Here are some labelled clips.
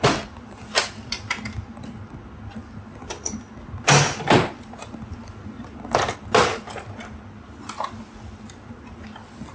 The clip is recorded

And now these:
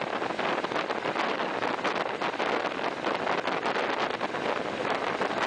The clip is recorded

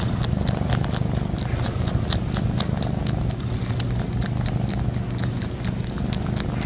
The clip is recorded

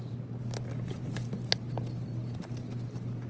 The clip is recorded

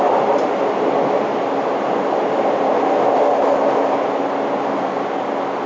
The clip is recorded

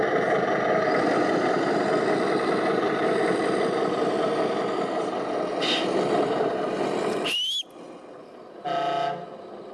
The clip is recorded